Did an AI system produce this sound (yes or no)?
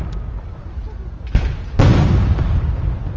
no